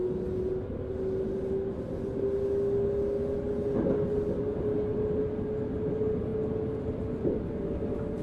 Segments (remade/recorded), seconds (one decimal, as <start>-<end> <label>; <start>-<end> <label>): 0.0-8.2 recorded